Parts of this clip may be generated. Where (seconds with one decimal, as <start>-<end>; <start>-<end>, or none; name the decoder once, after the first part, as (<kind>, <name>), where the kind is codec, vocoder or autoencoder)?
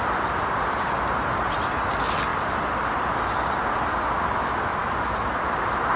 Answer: none